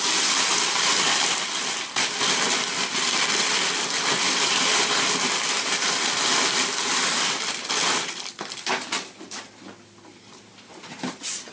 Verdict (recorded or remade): remade